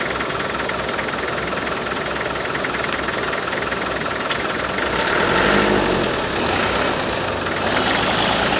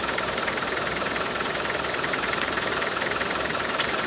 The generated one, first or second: second